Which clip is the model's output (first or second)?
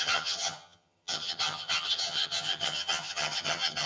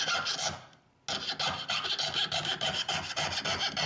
first